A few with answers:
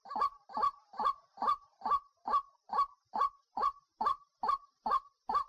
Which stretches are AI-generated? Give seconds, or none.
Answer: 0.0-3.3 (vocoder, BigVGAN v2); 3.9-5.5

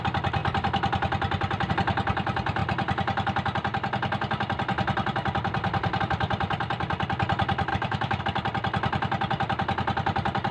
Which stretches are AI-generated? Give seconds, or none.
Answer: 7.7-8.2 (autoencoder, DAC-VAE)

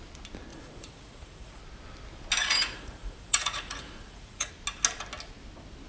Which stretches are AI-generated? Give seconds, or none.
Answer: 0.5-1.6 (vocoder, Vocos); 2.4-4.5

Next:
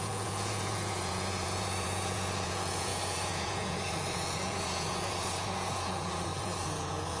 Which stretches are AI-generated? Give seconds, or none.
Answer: 0.0-7.2 (vocoder, Vocos)